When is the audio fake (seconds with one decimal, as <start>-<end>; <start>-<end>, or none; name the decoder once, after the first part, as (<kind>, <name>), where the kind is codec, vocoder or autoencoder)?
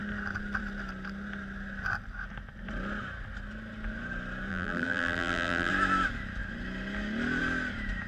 4.5-5.7 (vocoder, BigVGAN v2)